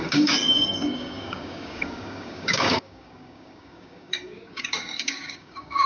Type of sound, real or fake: fake